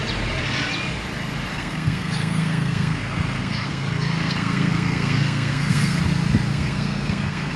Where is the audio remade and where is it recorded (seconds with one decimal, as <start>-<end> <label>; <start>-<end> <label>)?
0.0-1.5 recorded; 1.5-6.0 remade; 6.0-6.5 recorded; 6.5-7.6 remade